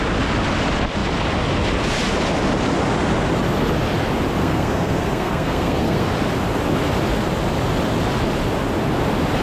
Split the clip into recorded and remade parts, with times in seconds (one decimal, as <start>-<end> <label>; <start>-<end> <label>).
0.0-4.4 recorded; 4.4-6.1 remade; 6.1-9.4 recorded